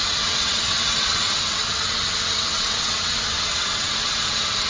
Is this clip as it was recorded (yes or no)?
no